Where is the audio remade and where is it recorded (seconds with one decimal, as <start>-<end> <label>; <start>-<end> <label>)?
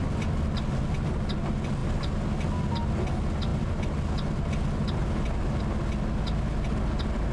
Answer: 0.0-7.3 recorded